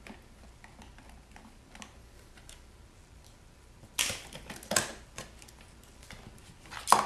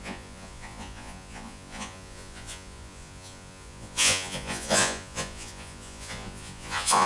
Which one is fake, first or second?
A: second